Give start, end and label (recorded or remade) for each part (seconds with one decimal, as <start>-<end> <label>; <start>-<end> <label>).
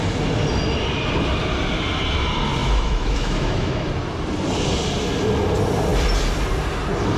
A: 0.0-2.6 recorded; 2.6-3.9 remade; 3.9-7.2 recorded